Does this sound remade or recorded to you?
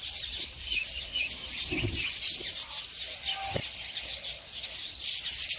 recorded